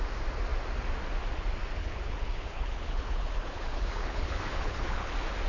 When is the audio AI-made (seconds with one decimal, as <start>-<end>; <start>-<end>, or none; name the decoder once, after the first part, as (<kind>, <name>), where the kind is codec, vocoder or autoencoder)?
1.8-5.1 (codec, HILCodec)